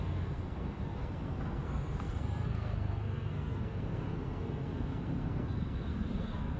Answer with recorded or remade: remade